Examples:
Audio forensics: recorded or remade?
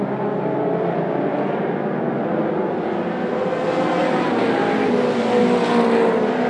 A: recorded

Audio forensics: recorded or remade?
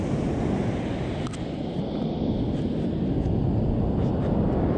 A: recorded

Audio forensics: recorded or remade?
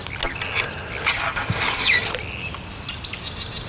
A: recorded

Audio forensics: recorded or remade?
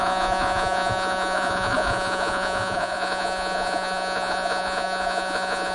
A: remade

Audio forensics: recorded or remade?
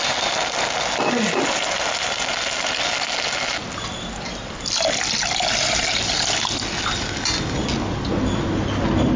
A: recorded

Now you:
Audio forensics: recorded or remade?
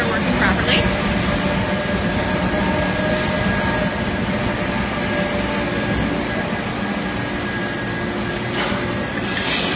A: recorded